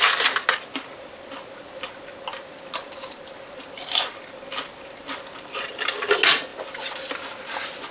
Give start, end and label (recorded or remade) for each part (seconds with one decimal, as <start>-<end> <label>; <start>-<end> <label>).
0.0-7.9 recorded